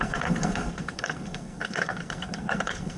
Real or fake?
fake